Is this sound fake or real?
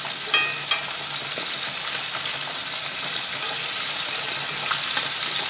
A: real